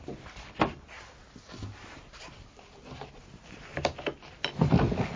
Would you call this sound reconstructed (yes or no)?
no